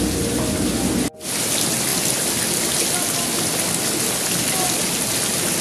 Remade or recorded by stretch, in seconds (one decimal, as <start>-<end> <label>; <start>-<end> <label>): 0.0-5.6 recorded